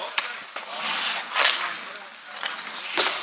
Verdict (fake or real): real